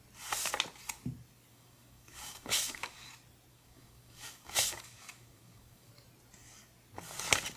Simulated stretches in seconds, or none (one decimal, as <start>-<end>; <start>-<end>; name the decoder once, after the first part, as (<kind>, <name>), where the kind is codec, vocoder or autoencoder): 1.5-3.1 (codec, DAC); 3.5-5.9